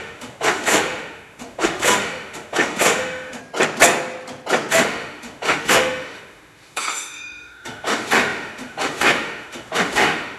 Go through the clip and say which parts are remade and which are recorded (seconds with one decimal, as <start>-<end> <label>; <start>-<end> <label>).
0.0-3.4 remade; 3.4-4.7 recorded; 4.7-10.4 remade